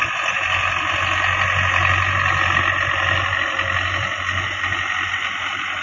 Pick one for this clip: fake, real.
real